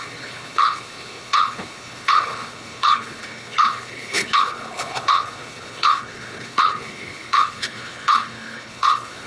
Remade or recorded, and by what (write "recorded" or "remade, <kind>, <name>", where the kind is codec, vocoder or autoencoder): remade, codec, HILCodec